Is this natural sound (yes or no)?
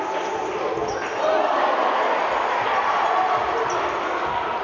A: yes